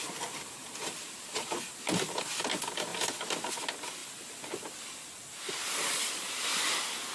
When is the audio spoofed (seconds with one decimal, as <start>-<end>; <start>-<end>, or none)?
none